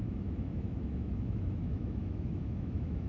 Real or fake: fake